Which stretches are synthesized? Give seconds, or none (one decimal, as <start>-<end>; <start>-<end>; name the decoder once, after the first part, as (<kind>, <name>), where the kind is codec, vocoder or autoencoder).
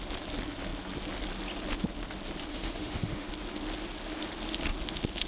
2.5-3.3 (autoencoder, DAC-VAE)